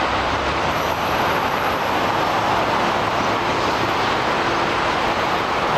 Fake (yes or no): no